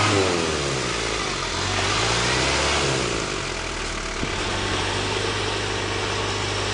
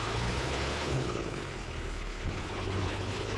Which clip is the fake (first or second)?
second